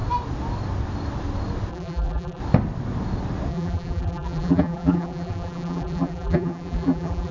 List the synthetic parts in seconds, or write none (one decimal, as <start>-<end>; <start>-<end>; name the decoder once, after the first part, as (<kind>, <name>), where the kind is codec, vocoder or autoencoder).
1.7-2.4 (vocoder, BigVGAN v2); 3.5-7.3

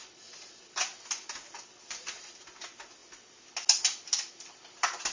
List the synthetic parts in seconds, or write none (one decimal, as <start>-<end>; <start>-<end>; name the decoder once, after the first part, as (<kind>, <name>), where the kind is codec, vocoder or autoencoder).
none

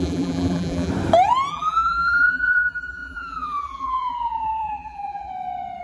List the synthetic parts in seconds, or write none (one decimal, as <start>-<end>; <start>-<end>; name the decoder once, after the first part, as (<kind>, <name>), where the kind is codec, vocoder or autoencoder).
0.0-0.9 (vocoder, BigVGAN v2); 1.5-5.3

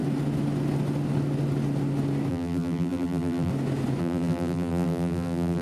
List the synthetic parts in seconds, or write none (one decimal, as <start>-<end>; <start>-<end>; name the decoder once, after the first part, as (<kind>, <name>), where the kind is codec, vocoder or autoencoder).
2.3-3.5 (vocoder, BigVGAN v2); 4.0-5.6

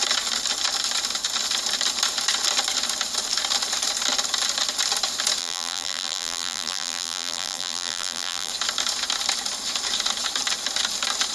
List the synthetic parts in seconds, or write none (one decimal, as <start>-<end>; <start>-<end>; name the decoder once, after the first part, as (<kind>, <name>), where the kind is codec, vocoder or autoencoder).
5.4-8.5 (vocoder, BigVGAN v2)

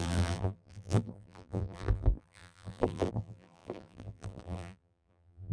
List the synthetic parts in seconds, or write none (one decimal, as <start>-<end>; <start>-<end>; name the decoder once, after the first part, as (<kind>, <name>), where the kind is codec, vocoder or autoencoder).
0.0-5.5 (vocoder, BigVGAN v2)

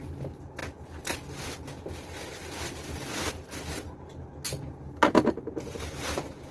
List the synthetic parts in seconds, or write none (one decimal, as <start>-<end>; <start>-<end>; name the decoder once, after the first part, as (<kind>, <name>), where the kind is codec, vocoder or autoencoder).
none